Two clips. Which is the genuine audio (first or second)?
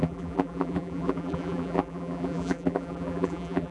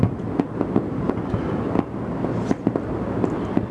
second